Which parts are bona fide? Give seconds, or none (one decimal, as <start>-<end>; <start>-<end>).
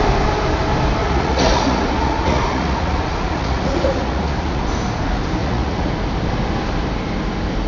0.0-1.0; 4.6-5.4; 5.9-7.7